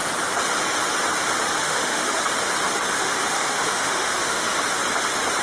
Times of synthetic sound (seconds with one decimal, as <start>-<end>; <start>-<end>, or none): 1.6-2.2; 2.9-4.5